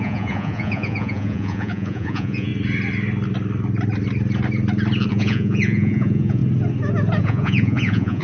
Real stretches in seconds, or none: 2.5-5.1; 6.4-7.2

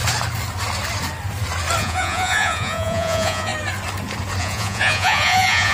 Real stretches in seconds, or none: 0.0-1.8; 3.5-4.4

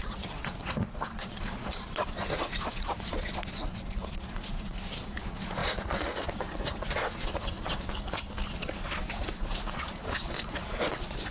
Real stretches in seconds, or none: 7.9-8.5